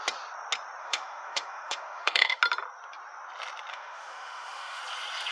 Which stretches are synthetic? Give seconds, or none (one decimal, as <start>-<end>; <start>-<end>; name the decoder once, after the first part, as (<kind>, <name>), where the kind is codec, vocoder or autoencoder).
0.8-2.4 (autoencoder, DAC-VAE); 3.7-4.8